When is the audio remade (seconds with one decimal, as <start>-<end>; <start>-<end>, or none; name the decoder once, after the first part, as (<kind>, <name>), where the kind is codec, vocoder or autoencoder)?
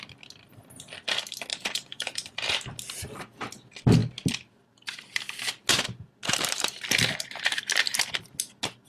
1.5-2.5 (vocoder, BigVGAN v2)